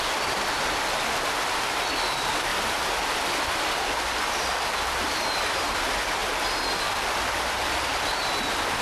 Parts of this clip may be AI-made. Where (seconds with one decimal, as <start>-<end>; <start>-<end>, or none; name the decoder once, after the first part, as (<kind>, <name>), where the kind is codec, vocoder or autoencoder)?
none